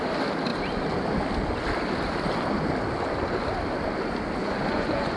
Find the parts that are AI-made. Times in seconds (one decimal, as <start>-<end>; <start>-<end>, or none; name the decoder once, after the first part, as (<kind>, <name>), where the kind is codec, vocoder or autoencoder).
4.4-5.2 (vocoder, Vocos)